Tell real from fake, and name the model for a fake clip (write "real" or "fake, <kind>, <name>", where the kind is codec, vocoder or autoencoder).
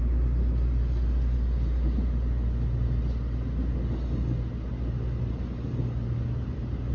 real